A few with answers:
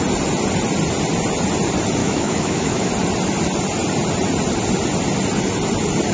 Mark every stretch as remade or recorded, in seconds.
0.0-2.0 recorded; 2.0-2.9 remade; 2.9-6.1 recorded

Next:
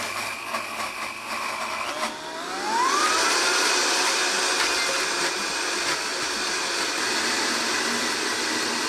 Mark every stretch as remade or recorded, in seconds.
0.0-8.9 recorded

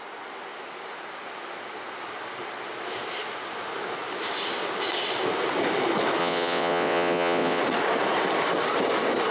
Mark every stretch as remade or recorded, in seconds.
0.0-6.2 recorded; 6.2-7.6 remade; 7.6-9.3 recorded

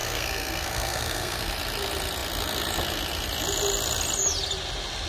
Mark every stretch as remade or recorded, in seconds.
0.0-1.5 remade; 1.5-5.1 recorded

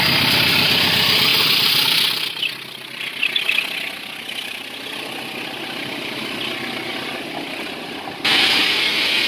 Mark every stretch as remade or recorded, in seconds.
0.0-9.3 recorded